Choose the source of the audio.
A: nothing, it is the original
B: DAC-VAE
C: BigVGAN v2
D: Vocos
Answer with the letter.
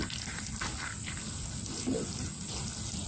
A